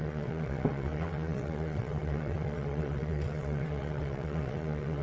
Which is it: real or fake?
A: fake